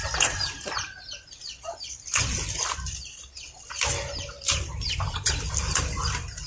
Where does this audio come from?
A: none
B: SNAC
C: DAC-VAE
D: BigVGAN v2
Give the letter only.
D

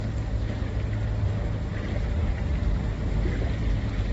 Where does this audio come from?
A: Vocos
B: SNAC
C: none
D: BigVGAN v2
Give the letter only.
C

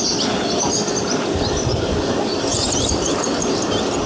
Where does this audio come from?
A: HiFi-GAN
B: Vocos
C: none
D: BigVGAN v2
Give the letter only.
C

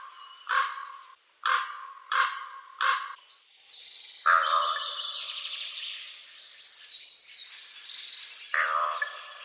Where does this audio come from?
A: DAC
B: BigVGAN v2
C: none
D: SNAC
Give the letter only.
C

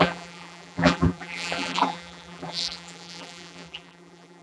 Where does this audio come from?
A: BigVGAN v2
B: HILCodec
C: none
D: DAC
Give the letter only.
A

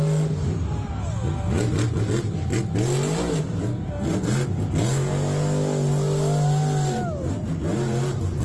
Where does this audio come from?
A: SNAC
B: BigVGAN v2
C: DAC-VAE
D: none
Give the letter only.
D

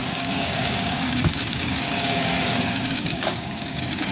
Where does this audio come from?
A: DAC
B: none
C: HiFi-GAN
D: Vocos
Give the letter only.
A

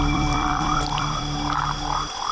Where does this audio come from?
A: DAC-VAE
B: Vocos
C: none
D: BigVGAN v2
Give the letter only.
D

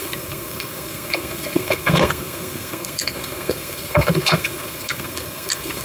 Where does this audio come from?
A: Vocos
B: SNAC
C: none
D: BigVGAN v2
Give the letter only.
B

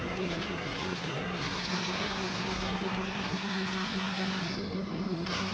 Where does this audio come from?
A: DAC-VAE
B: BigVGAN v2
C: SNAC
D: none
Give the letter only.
C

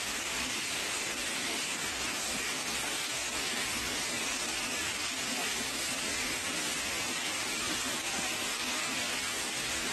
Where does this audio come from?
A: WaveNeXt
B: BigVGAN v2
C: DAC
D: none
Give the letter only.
C